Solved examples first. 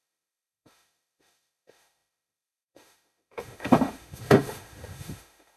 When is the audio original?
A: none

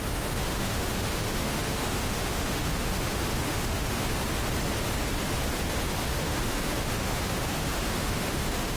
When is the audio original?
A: 4.2-6.0

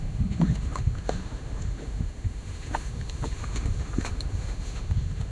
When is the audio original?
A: none

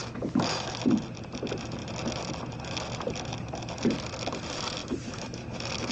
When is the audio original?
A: 0.8-4.8

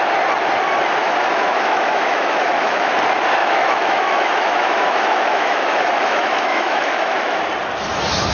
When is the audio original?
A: 0.0-1.0; 2.9-3.4; 7.4-8.3

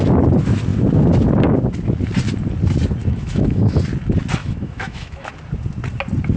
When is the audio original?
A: 0.0-3.0; 3.8-4.4; 5.3-6.4

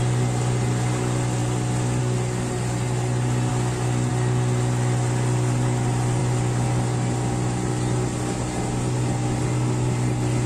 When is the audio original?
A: 0.0-10.5

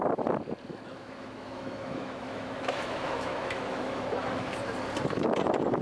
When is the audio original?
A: 0.0-1.0; 4.5-5.8